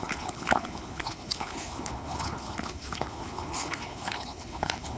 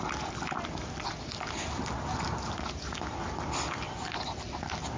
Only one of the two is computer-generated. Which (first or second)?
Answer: first